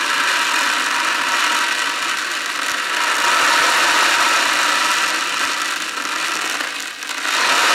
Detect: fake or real real